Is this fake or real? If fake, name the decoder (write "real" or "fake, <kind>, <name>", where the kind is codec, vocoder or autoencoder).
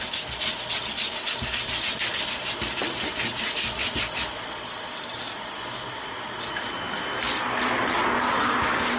real